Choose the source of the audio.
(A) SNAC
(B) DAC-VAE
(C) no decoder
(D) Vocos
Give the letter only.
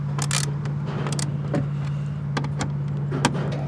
C